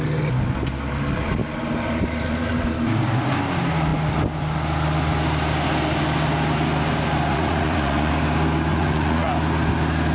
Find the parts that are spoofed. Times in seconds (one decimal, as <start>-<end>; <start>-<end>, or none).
7.3-8.1; 8.7-9.3